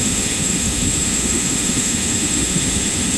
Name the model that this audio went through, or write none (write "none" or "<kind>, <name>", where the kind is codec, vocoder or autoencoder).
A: autoencoder, DAC-VAE